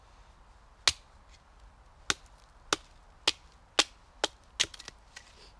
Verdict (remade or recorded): recorded